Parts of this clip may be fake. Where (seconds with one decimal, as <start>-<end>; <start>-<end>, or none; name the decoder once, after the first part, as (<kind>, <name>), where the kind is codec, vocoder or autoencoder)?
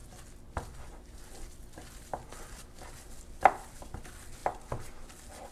none